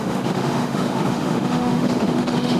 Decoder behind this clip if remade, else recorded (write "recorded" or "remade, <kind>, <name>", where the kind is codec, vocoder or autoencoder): remade, autoencoder, DAC-VAE